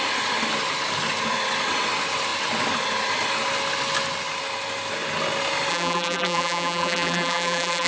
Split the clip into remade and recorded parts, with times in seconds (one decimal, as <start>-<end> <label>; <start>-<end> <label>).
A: 0.0-5.7 recorded; 5.7-7.9 remade